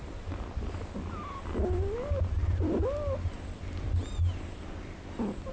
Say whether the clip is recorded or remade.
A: recorded